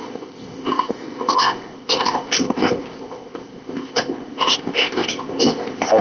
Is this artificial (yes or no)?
yes